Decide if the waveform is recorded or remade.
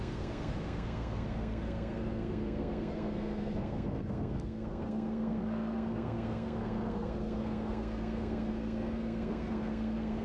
remade